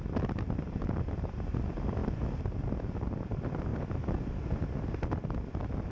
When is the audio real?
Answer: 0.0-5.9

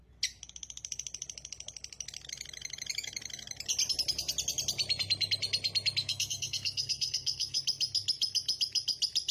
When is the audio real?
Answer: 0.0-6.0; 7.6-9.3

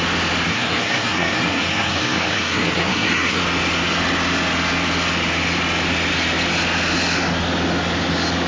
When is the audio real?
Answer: 0.0-0.5; 3.4-8.5

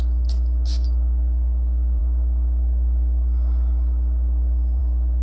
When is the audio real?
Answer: 0.0-5.2

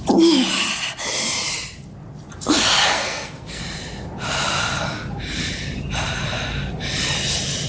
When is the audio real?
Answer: 0.0-2.8; 3.6-7.7

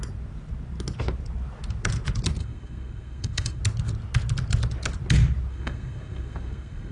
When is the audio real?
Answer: 0.0-2.4; 3.6-5.5